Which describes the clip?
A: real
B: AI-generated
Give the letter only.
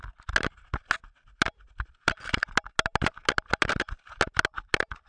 A